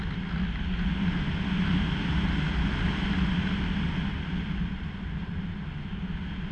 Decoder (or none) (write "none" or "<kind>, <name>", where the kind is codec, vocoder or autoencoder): none